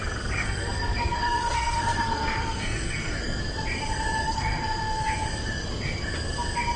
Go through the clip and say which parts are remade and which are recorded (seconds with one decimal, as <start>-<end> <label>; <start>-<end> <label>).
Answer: 0.0-0.4 recorded; 0.4-3.4 remade; 3.4-4.2 recorded; 4.2-5.1 remade; 5.1-6.8 recorded